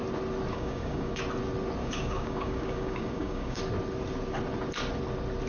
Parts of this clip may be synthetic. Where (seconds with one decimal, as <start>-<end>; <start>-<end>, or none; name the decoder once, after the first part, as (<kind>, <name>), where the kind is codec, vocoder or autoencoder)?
0.5-1.2 (codec, DAC); 1.8-3.6